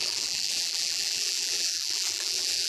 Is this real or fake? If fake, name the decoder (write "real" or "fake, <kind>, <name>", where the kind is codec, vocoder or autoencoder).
fake, vocoder, BigVGAN v2